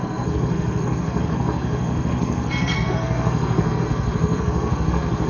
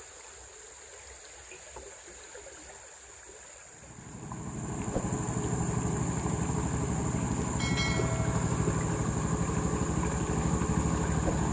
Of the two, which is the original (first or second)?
second